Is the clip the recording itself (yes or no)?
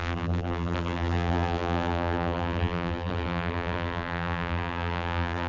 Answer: no